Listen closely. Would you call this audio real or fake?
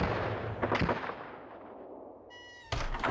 real